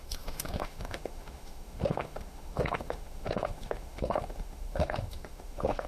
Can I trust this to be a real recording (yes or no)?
no